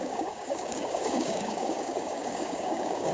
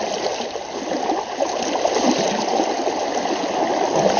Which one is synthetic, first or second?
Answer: first